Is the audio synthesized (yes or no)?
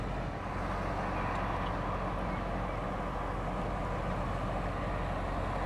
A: no